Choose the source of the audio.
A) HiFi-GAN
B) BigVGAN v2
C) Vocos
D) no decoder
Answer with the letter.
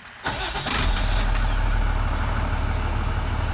D